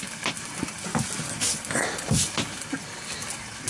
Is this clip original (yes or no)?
yes